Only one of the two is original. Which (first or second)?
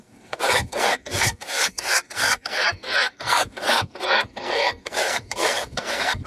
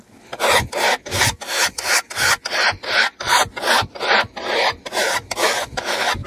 second